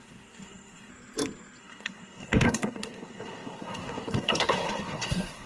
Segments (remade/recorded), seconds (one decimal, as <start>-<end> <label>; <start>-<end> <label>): 0.0-0.9 remade; 0.9-1.6 recorded; 1.6-5.5 remade